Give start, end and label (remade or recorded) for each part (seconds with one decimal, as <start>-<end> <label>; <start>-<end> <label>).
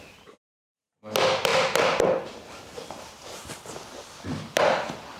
0.0-5.2 recorded